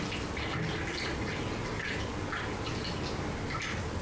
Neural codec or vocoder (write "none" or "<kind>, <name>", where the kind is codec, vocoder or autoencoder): none